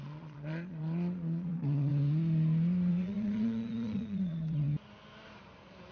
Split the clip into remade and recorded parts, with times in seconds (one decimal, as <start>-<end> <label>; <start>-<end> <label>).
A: 0.0-1.9 remade; 1.9-2.9 recorded; 2.9-4.7 remade; 4.7-5.9 recorded